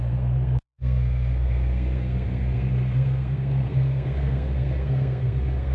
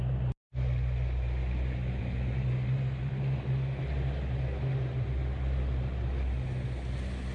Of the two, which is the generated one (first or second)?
first